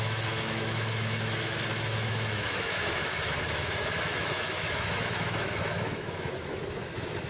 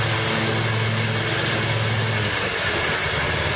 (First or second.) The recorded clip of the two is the second